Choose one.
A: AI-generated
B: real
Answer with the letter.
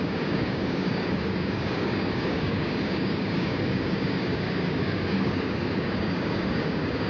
A